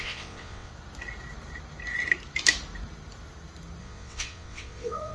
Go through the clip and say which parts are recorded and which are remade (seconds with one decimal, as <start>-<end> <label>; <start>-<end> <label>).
0.0-0.7 remade; 0.7-3.8 recorded; 3.8-5.1 remade